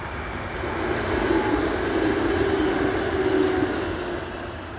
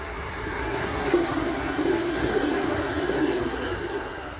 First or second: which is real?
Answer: first